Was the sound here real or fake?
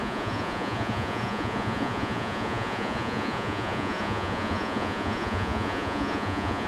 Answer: fake